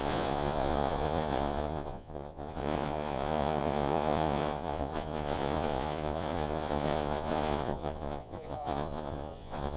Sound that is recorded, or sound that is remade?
remade